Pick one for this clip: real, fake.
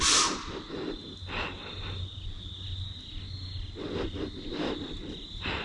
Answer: real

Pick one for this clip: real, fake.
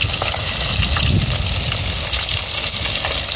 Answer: real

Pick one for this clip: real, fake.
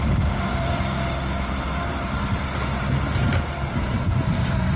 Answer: fake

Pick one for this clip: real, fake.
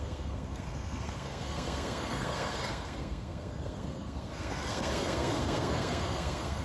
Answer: fake